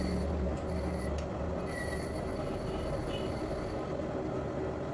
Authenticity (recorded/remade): recorded